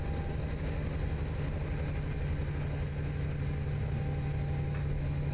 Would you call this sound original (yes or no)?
yes